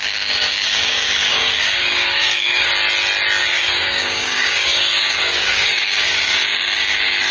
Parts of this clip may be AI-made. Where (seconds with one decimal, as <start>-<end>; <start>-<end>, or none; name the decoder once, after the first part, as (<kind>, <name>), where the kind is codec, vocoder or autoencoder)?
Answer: 0.0-2.7 (codec, DAC); 3.4-7.3